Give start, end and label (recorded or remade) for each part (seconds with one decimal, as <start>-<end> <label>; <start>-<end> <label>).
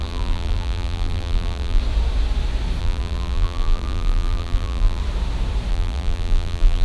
0.0-1.8 remade; 1.8-2.8 recorded; 2.8-5.0 remade; 5.0-5.7 recorded; 5.7-6.8 remade